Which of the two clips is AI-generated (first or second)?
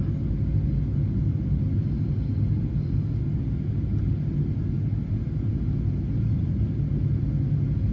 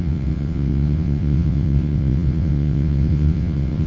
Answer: second